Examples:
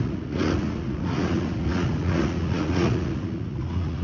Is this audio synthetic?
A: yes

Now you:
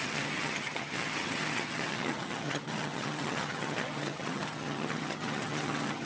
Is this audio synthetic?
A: yes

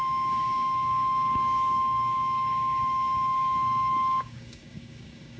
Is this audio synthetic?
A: yes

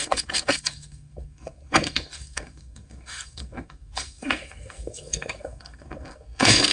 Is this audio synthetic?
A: yes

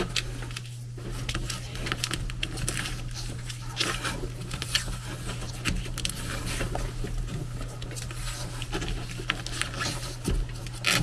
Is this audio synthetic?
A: no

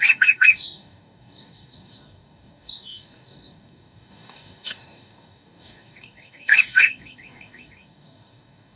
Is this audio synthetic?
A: yes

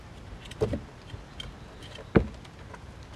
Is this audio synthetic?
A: no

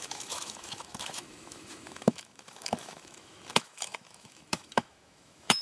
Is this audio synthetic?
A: yes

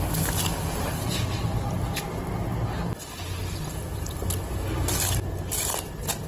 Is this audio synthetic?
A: no